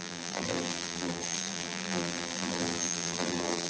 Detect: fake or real fake